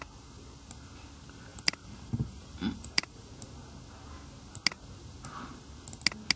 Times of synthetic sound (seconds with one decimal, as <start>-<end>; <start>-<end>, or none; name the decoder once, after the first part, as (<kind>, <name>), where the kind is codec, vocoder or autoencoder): 1.5-3.3 (vocoder, BigVGAN v2)